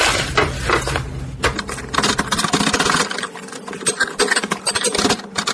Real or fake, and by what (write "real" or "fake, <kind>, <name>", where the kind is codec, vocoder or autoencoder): real